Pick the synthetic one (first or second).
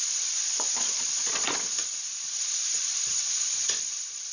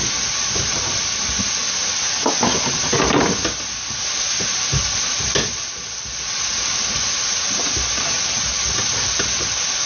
first